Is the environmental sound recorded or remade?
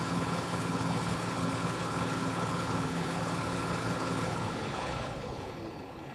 remade